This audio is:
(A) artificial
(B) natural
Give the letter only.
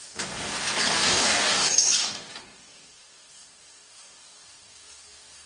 A